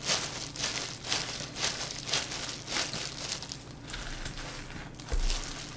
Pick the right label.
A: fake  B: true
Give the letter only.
B